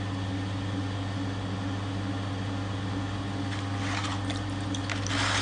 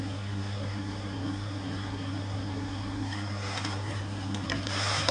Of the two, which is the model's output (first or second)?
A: second